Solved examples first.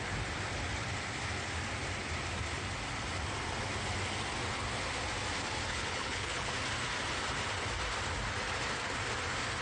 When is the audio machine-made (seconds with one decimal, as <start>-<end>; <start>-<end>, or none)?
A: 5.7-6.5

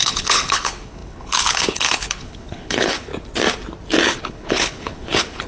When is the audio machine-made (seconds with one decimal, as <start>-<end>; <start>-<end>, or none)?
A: 0.0-3.1; 4.2-5.5

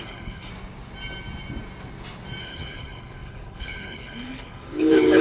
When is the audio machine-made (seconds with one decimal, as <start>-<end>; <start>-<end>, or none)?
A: 0.0-0.5; 2.4-5.2

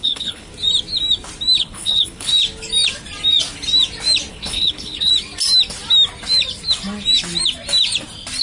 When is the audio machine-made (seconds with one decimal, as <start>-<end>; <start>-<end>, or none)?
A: 0.0-0.5; 1.6-2.3; 4.3-5.1